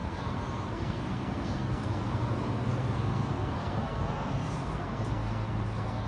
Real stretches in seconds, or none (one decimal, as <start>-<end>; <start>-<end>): none